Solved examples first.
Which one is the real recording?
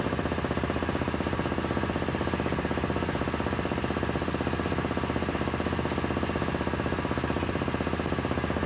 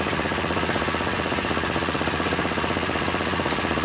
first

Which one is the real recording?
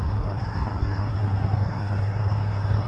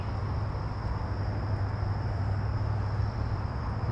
second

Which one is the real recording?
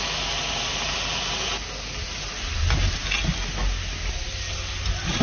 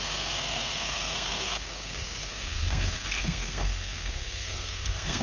first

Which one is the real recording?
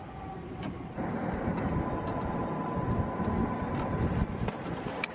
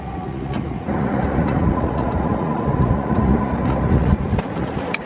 first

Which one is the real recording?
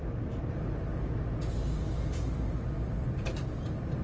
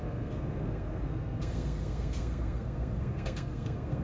first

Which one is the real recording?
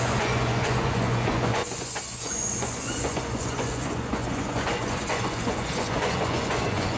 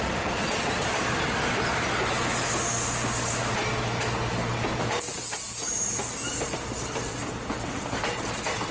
second